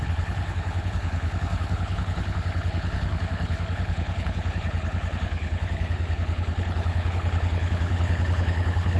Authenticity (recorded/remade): remade